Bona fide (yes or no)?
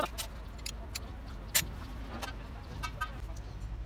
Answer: yes